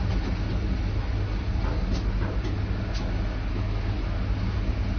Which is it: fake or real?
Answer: real